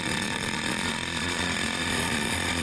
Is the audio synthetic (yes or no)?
yes